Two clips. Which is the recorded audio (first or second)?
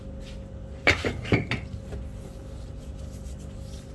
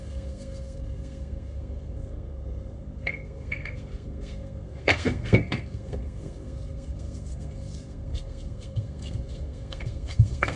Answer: first